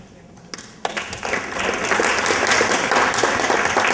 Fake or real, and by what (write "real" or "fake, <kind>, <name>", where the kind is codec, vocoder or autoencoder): real